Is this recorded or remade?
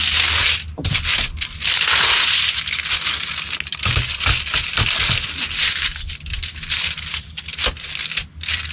recorded